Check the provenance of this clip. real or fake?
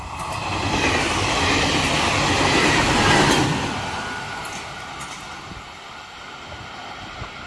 real